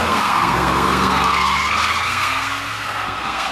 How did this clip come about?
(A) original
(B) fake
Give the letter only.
B